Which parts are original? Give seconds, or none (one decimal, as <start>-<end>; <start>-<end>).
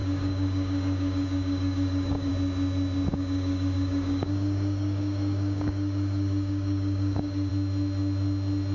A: 2.3-3.1; 7.5-8.7